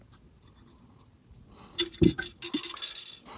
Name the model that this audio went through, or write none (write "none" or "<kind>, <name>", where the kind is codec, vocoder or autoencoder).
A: none